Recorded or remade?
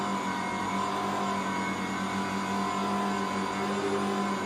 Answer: recorded